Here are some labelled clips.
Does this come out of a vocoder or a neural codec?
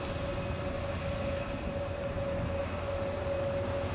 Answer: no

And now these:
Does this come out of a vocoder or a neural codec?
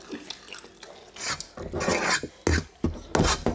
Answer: no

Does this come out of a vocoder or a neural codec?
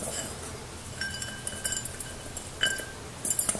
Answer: no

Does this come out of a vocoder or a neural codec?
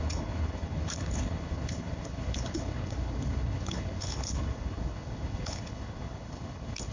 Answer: yes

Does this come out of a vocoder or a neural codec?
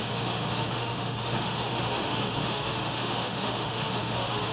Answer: yes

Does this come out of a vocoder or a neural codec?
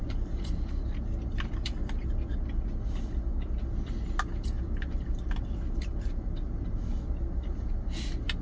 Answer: no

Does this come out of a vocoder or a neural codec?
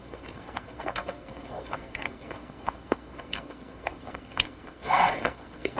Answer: yes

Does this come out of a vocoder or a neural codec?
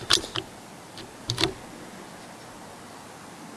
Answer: no